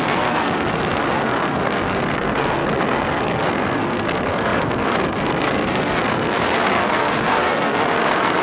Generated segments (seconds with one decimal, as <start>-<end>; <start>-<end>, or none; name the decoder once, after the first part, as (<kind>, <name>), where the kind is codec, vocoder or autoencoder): 0.0-8.4 (codec, SNAC)